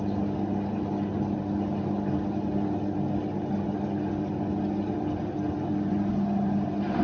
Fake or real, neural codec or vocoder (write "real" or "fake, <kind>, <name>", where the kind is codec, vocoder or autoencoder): real